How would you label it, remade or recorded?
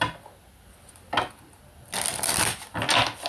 recorded